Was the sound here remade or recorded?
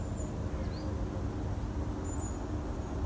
recorded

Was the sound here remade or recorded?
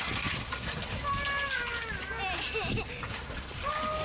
recorded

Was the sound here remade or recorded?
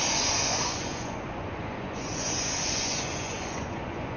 remade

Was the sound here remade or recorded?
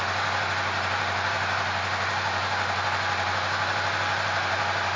recorded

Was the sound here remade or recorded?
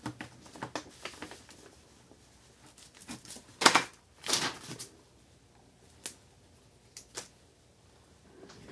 recorded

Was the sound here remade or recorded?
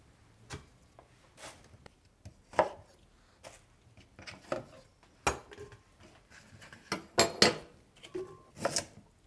recorded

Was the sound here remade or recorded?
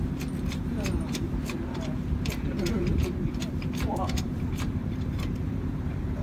remade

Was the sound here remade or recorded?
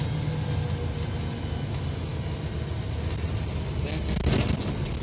recorded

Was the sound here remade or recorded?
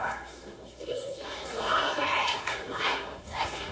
remade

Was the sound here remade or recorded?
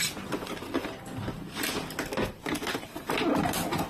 recorded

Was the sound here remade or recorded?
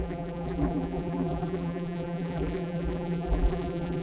remade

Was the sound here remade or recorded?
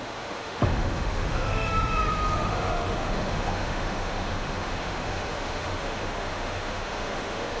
remade